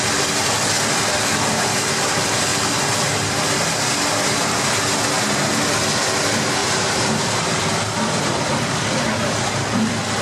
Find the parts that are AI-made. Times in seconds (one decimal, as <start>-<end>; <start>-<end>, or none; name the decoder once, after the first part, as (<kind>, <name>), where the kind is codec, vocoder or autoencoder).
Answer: 6.6-7.6 (vocoder, BigVGAN v2)